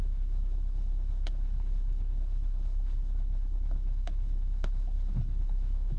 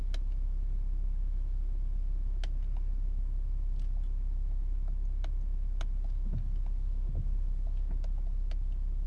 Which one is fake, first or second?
first